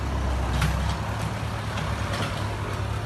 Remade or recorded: recorded